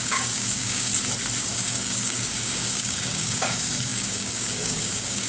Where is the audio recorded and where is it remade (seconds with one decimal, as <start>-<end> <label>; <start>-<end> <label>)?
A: 0.0-0.9 remade; 0.9-1.4 recorded; 1.4-5.3 remade

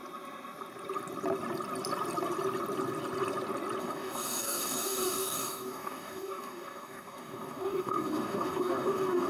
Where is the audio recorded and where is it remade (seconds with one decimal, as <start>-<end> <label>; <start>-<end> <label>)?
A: 0.0-3.8 recorded; 3.8-9.3 remade

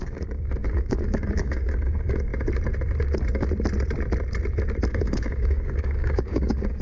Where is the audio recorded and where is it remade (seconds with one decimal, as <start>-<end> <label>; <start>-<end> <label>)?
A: 0.0-2.3 remade; 2.3-4.9 recorded; 4.9-6.8 remade